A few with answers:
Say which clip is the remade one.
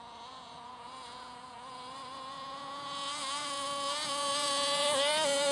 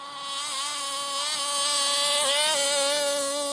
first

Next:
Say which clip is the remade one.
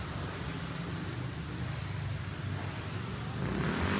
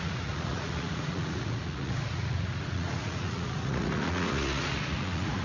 second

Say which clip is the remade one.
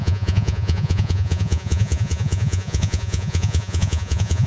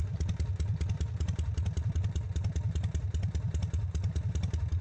first